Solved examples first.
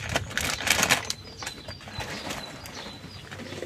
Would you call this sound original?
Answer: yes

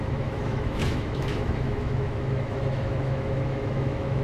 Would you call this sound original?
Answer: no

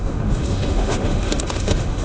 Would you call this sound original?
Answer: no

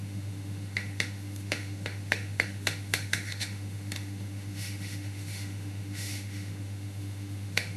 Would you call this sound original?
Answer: no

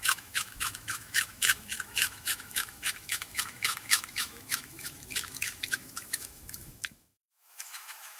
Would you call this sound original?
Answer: no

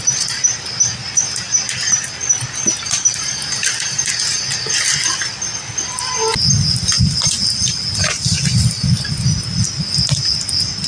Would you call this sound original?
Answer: yes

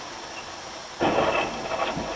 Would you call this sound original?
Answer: yes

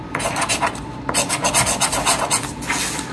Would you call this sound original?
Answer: yes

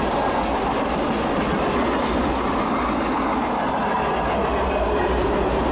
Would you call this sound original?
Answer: yes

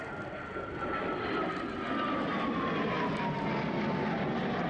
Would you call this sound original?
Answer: yes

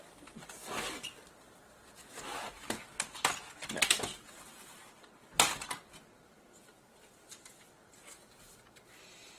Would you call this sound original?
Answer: yes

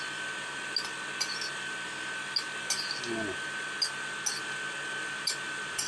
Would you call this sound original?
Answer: yes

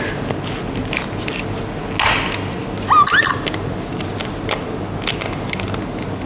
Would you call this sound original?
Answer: yes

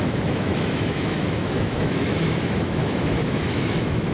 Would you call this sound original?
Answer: no